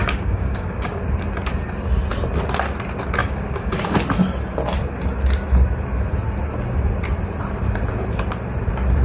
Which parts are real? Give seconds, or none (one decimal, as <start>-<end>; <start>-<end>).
1.0-3.2; 3.9-9.0